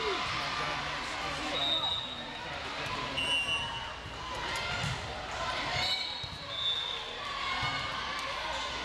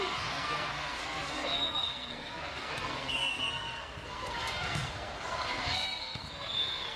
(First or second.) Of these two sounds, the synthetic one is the second